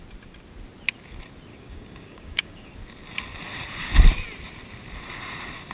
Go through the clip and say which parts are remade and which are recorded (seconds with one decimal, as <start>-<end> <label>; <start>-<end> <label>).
0.0-1.5 recorded; 1.5-2.7 remade; 2.7-5.7 recorded